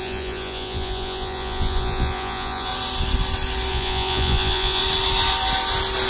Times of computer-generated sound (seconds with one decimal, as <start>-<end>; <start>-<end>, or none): 0.0-2.7; 3.7-4.8